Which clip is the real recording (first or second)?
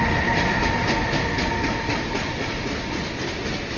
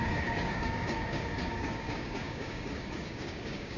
first